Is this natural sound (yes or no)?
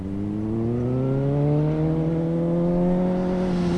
yes